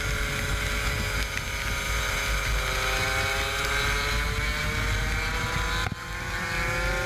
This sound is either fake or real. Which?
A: real